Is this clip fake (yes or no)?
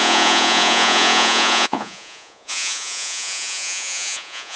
yes